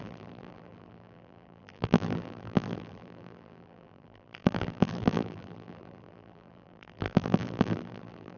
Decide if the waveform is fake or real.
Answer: fake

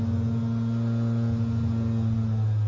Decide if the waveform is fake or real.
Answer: real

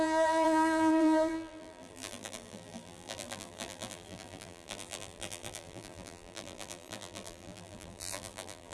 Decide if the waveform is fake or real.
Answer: fake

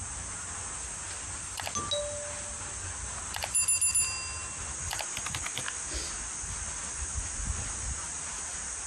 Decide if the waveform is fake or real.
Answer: real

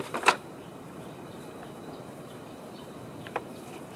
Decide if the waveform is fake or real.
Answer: fake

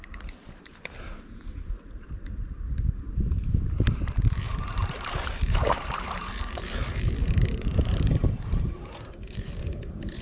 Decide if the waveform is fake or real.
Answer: fake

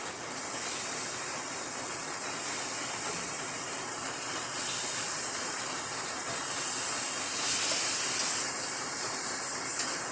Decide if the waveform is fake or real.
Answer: real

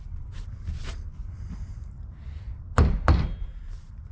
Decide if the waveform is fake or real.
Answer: fake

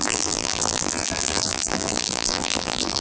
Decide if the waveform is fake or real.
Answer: fake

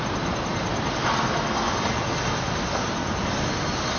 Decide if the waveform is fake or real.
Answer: real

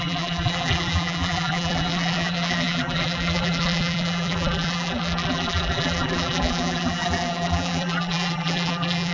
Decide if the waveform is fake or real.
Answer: fake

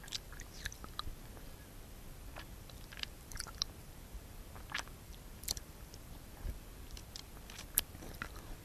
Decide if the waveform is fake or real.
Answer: fake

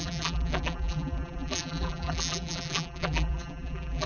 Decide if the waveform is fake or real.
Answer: fake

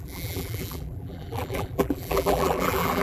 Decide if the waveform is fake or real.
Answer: fake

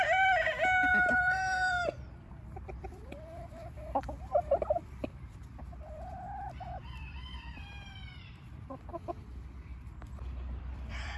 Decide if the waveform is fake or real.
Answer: fake